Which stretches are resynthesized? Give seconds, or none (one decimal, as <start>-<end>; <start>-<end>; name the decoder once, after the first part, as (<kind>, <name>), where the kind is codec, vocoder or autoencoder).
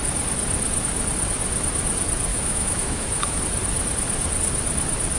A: 2.3-3.4 (autoencoder, DAC-VAE)